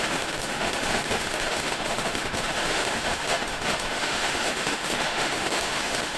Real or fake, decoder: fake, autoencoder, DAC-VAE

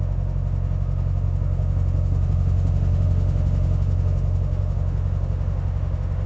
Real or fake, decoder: fake, autoencoder, DAC-VAE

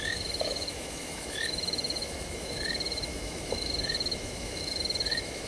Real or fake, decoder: fake, autoencoder, DAC-VAE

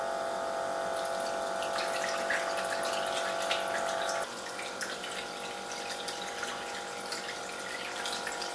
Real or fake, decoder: real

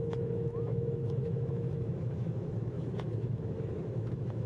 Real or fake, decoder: fake, autoencoder, DAC-VAE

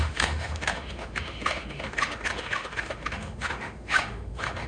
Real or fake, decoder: fake, autoencoder, DAC-VAE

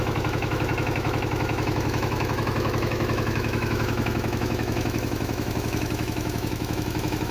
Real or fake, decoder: fake, autoencoder, DAC-VAE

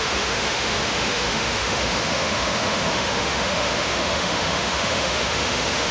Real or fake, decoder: fake, autoencoder, DAC-VAE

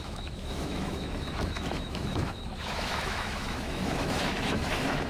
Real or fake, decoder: fake, autoencoder, DAC-VAE